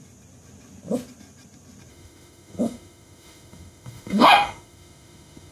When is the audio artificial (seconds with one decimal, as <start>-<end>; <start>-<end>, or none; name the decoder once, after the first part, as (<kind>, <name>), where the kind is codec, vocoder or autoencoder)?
1.9-5.5 (autoencoder, DAC-VAE)